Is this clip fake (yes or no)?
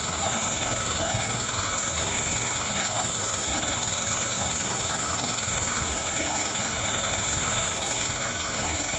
yes